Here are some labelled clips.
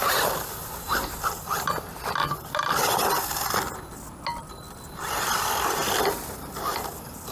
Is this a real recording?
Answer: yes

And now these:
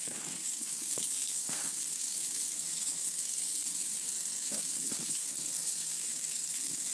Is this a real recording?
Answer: no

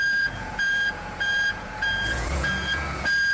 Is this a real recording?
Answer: no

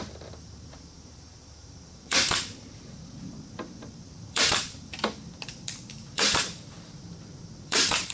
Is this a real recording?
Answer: no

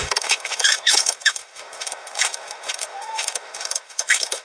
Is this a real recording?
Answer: no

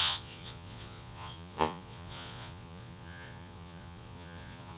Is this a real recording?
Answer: no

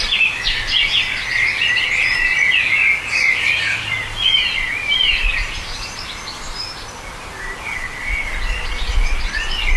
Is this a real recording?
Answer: no